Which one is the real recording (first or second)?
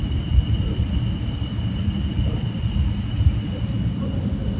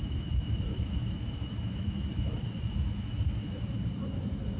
first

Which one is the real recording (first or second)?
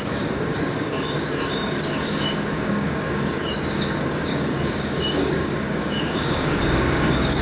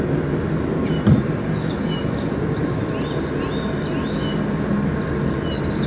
second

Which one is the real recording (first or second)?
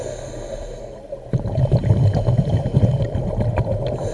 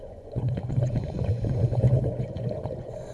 first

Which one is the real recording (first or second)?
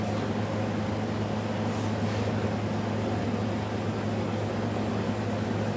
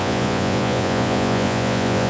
first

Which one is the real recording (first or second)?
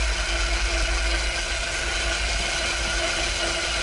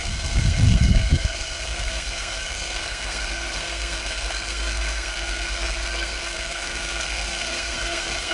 first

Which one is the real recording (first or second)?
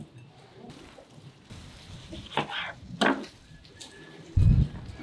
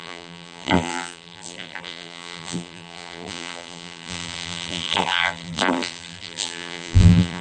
first